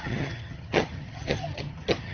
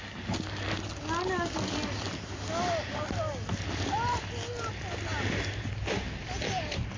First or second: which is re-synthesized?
first